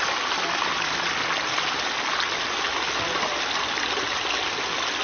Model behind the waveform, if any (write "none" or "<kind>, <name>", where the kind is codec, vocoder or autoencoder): none